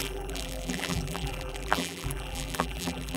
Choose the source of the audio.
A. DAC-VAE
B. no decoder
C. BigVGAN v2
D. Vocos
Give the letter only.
C